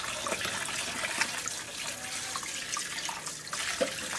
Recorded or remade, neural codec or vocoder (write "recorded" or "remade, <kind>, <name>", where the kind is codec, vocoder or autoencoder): recorded